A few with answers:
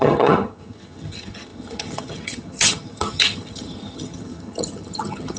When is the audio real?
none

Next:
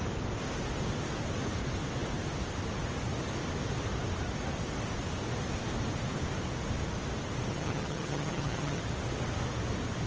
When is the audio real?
0.0-7.5; 8.8-10.1

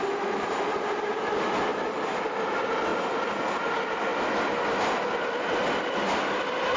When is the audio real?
0.0-6.8